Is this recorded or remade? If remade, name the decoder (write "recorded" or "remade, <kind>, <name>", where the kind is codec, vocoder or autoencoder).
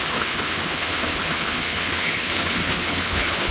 remade, codec, HILCodec